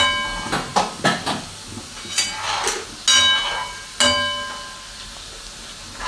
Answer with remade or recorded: recorded